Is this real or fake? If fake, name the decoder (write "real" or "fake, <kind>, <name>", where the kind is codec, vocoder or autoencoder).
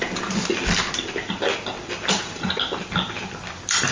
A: real